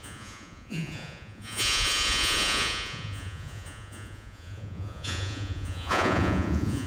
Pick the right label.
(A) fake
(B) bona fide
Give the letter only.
A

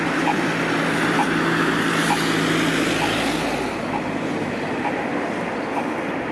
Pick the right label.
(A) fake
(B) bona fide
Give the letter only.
B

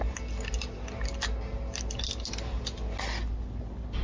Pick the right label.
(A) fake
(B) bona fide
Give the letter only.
B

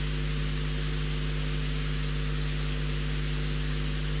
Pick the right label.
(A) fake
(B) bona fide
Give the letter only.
B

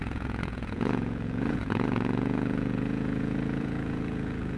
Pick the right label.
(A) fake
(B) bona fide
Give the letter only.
A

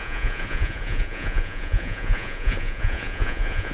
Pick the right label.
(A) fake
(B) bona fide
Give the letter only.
A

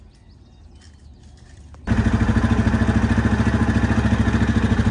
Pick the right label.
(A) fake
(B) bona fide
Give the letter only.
B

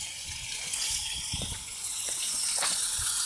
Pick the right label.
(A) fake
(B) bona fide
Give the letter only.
A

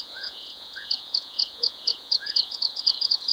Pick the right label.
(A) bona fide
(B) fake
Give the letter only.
B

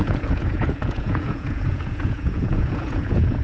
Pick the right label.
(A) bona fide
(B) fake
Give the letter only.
B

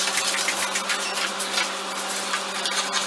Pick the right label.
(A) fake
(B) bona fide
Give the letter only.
B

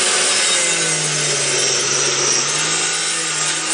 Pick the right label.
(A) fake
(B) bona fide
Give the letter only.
B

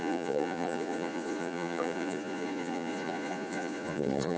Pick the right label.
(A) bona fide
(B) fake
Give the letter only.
B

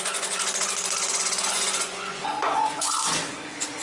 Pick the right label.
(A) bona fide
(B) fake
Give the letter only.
B